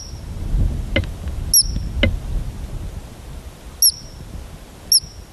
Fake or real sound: real